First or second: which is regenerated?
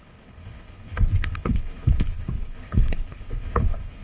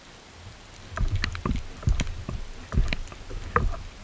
first